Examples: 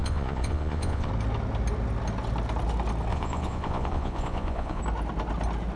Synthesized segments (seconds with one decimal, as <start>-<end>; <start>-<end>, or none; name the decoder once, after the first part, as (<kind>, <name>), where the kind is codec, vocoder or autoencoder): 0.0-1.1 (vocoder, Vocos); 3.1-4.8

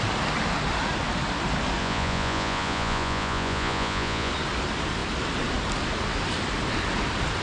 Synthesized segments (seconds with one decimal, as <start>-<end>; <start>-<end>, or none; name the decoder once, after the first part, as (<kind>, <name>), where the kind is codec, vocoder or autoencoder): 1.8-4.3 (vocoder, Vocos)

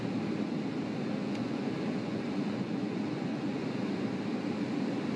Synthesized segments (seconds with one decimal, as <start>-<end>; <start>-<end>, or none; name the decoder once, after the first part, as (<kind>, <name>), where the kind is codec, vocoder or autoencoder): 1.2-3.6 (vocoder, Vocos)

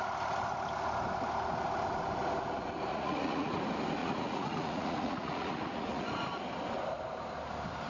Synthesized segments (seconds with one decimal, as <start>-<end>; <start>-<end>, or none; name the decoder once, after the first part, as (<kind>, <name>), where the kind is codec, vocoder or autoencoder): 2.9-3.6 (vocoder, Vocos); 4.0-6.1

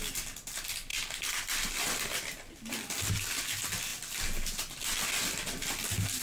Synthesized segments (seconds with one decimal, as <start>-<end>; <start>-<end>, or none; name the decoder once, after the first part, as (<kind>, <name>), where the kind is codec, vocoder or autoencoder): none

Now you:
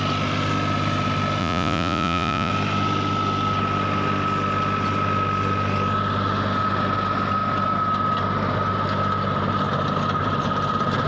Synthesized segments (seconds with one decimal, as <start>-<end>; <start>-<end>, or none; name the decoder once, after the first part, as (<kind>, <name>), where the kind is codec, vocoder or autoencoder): 1.4-2.5 (vocoder, Vocos)